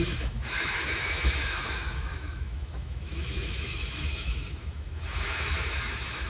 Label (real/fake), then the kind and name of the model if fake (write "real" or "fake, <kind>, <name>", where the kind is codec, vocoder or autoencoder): fake, autoencoder, DAC-VAE